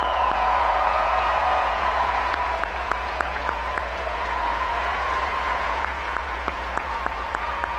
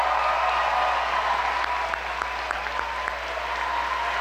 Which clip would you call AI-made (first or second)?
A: first